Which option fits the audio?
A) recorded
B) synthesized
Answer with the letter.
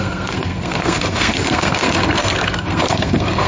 B